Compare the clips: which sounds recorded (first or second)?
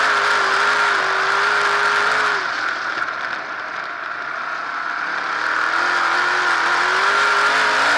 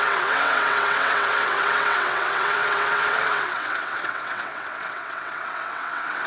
first